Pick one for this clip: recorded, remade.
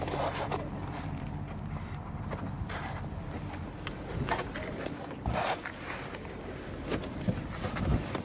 remade